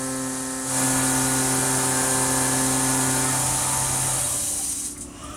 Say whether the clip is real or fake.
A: real